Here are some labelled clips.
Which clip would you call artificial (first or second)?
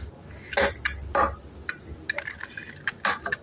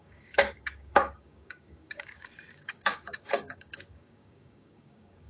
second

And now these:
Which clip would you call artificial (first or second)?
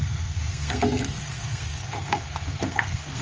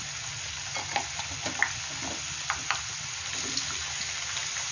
first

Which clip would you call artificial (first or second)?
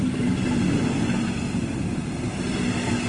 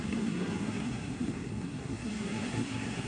second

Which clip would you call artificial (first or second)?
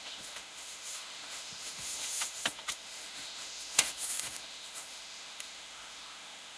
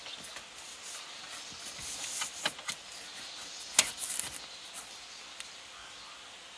first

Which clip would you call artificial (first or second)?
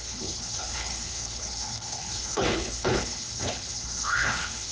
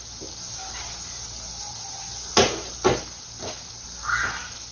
first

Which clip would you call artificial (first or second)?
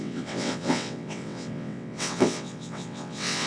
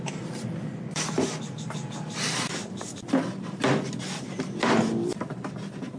first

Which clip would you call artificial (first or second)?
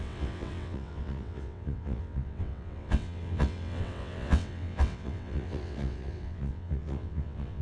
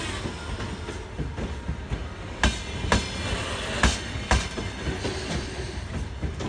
first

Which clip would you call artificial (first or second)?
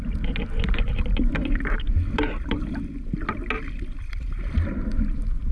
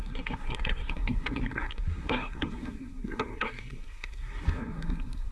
second